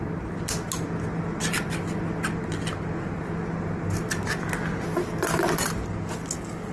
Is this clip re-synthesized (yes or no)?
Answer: no